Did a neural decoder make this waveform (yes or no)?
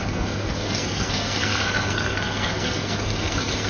yes